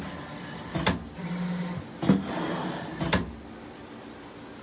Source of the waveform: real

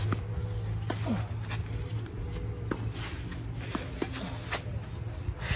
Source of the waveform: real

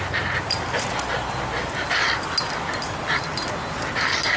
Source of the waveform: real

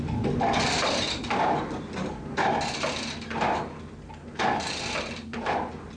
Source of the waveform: real